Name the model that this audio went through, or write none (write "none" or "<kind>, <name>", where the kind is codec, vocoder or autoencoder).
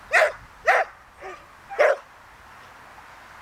none